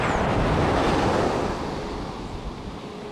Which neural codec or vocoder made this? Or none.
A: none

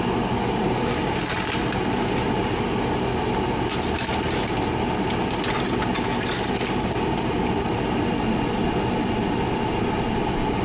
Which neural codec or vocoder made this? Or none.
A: none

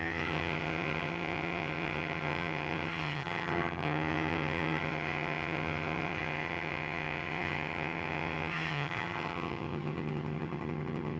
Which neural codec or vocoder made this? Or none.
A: vocoder, HiFi-GAN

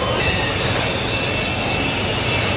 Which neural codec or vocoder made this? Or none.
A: none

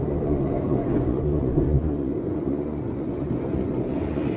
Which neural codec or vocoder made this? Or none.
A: vocoder, Vocos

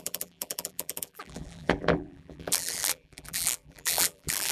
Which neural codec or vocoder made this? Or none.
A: vocoder, BigVGAN v2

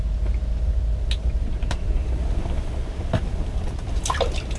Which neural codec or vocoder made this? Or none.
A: none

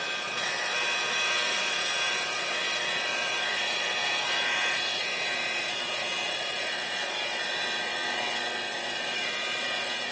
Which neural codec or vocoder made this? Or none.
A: vocoder, Vocos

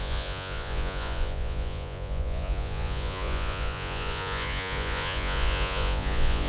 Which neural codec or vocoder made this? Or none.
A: vocoder, Vocos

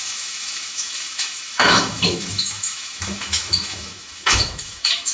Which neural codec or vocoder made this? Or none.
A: autoencoder, DAC-VAE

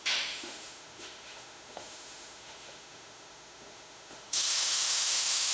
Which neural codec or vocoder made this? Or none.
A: autoencoder, DAC-VAE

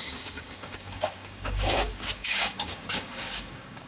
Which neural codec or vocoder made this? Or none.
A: codec, DAC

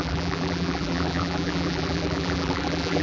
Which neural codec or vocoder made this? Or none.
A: vocoder, BigVGAN v2